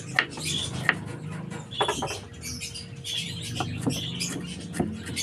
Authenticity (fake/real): real